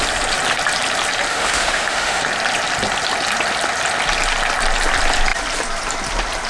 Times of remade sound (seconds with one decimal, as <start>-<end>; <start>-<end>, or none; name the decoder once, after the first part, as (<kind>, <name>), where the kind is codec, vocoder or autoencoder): 1.3-2.2 (autoencoder, DAC-VAE)